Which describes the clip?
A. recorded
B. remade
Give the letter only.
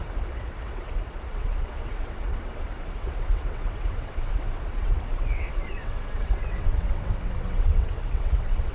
B